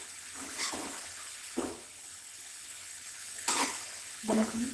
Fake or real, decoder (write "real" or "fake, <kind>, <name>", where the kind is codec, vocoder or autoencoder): fake, codec, HILCodec